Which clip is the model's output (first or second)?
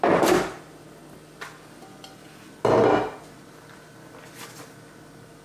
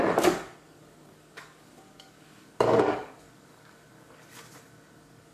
second